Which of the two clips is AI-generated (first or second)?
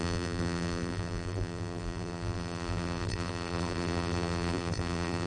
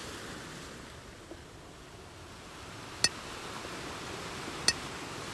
first